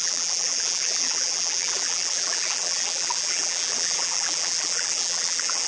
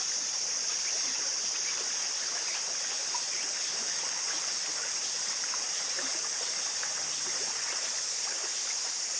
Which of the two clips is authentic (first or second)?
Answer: second